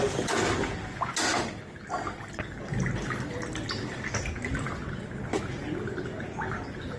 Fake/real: real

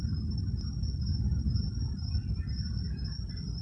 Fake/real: real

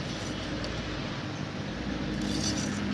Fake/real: real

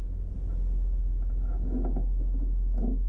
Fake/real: real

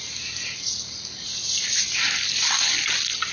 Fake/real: real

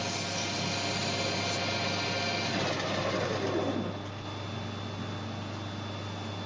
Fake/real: real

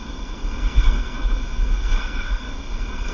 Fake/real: fake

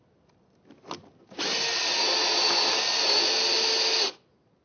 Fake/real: real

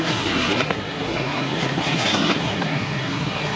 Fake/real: fake